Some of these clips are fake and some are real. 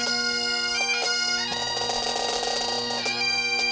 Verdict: real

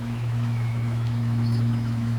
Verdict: fake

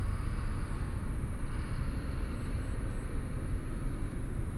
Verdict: real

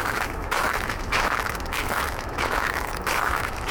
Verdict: fake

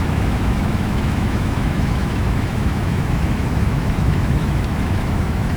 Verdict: fake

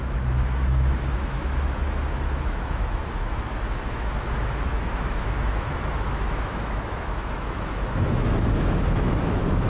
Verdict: fake